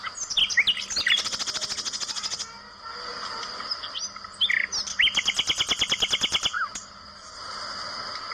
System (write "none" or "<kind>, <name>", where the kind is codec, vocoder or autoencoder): none